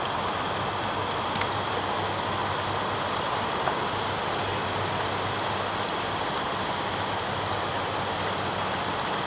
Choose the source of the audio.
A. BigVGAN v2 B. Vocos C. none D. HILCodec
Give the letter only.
C